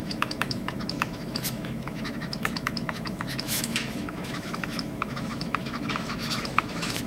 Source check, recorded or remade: remade